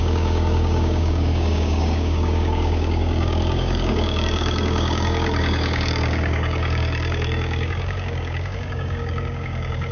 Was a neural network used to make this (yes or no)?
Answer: yes